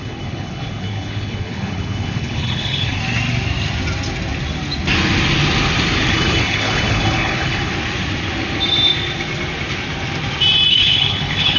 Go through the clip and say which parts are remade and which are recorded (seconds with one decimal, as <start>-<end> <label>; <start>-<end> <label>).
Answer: 0.0-3.0 remade; 3.0-6.1 recorded; 6.1-7.7 remade; 7.7-10.7 recorded; 10.7-11.6 remade